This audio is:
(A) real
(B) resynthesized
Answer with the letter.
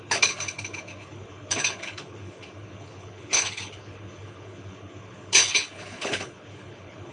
B